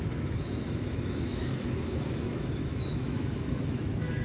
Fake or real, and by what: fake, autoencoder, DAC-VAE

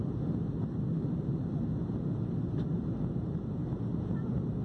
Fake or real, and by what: real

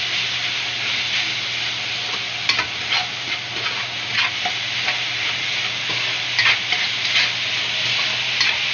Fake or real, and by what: real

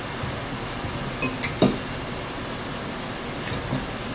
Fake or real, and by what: real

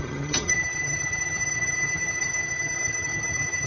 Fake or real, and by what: fake, vocoder, HiFi-GAN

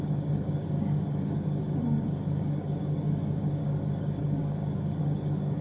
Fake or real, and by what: fake, codec, DAC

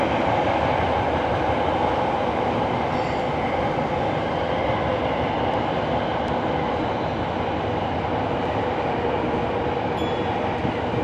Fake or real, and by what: real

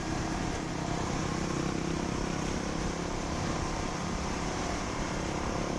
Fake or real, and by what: fake, vocoder, BigVGAN v2